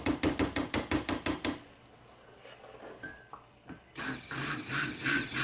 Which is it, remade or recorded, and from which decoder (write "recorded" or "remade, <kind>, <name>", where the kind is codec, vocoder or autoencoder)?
recorded